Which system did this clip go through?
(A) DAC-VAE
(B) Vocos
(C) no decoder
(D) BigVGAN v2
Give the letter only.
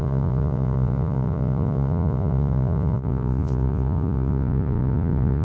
B